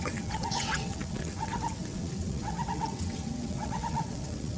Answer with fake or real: fake